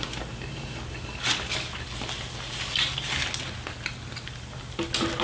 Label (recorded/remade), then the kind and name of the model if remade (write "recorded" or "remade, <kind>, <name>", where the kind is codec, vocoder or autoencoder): recorded